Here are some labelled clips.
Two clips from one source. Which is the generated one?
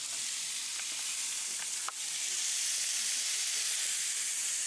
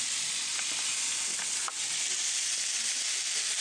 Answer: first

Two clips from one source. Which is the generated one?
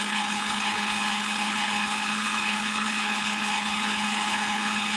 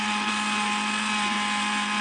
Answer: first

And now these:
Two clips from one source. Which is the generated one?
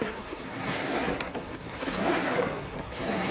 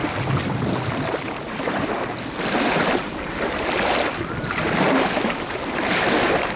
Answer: first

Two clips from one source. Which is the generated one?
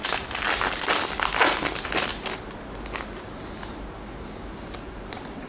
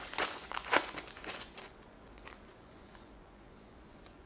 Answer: second